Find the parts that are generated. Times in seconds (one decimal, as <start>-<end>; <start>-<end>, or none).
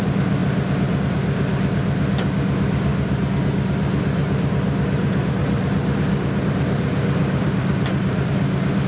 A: 4.2-6.4; 7.2-8.3